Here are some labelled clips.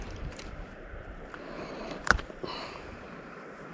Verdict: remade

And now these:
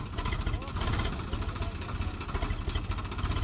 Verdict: recorded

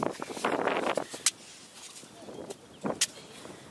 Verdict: recorded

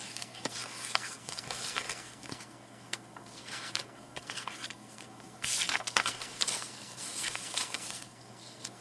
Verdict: remade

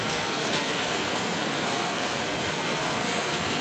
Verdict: remade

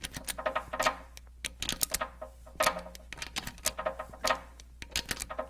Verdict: recorded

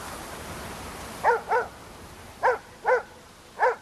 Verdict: recorded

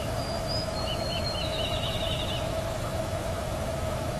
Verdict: remade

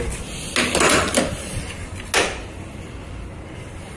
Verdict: recorded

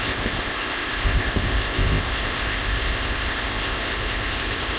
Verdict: remade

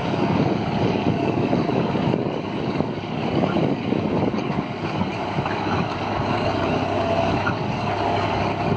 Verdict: remade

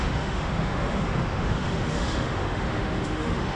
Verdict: remade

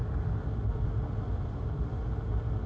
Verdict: recorded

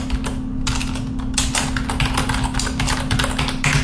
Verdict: recorded